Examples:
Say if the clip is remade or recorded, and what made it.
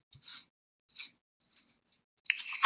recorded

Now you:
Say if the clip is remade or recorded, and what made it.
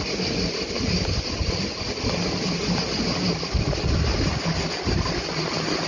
recorded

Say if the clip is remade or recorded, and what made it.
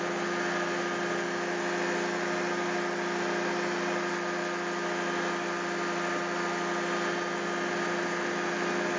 recorded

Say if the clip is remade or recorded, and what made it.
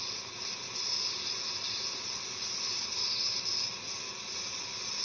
recorded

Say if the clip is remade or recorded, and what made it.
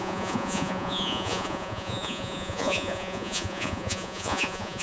remade, vocoder, Vocos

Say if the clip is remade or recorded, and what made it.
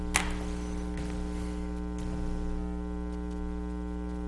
recorded